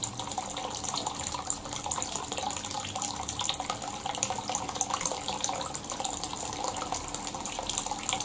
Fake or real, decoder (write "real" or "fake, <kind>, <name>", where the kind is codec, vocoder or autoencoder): real